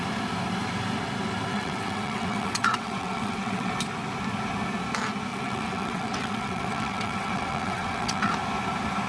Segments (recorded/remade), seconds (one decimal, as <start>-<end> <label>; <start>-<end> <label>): 0.0-1.5 recorded; 1.5-3.7 remade; 3.7-5.3 recorded; 5.3-8.3 remade; 8.3-9.1 recorded